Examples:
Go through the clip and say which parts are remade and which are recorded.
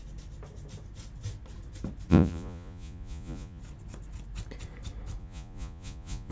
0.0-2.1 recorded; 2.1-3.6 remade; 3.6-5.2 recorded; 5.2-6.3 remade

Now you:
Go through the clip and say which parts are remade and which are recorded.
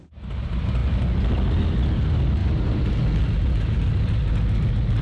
0.0-2.4 recorded; 2.4-3.0 remade; 3.0-5.0 recorded